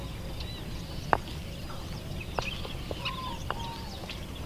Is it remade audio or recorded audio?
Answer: recorded